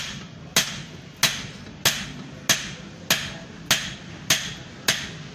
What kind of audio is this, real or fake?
real